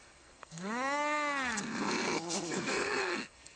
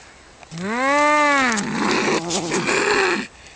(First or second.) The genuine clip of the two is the second